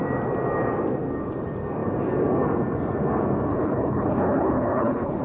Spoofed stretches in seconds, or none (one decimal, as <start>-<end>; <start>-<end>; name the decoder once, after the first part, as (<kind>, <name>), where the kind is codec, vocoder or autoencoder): 3.5-5.2 (codec, HILCodec)